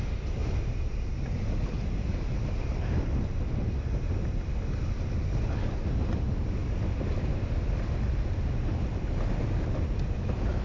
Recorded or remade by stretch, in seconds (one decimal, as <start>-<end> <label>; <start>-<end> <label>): 0.0-10.6 recorded